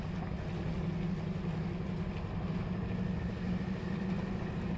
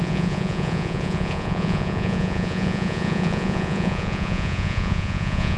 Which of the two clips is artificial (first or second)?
second